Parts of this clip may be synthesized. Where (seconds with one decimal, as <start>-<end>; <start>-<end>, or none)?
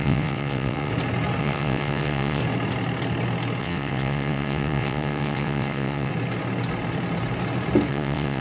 0.0-0.9; 1.4-2.4; 3.6-6.1; 7.9-8.4